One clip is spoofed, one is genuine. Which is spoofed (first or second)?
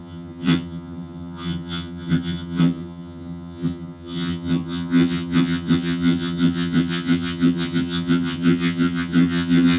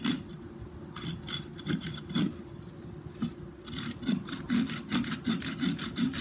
first